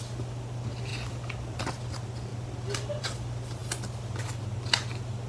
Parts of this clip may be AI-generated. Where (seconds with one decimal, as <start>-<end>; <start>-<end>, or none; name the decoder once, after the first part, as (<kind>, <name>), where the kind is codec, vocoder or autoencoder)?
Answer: none